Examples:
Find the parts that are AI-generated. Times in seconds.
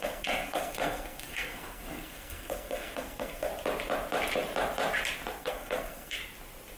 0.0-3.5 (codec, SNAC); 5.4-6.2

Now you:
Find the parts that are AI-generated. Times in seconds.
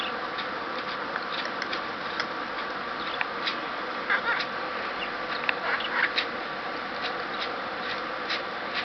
none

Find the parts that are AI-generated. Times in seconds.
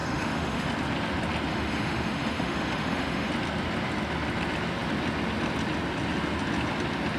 0.0-0.7 (autoencoder, DAC-VAE); 1.5-3.3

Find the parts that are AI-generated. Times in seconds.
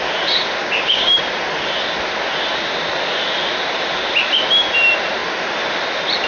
0.6-1.2 (codec, DAC)